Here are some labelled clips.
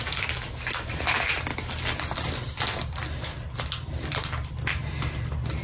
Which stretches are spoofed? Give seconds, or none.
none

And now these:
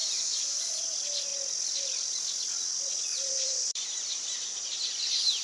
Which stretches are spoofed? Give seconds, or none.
0.0-0.7 (vocoder, BigVGAN v2); 1.3-2.1; 3.1-4.2